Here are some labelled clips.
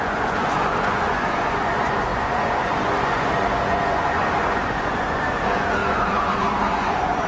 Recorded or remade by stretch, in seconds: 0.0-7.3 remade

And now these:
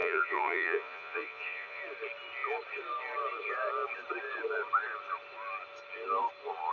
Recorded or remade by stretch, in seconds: 0.0-1.8 remade; 1.8-6.7 recorded

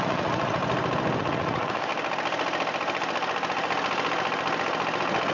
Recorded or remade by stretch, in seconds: 0.0-0.6 remade; 0.6-1.2 recorded; 1.2-1.9 remade; 1.9-5.3 recorded

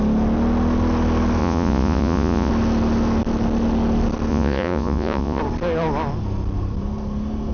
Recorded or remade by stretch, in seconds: 0.0-1.4 recorded; 1.4-2.5 remade; 2.5-4.3 recorded; 4.3-5.4 remade; 5.4-7.5 recorded